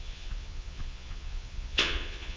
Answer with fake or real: fake